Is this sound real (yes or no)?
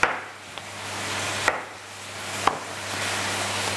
yes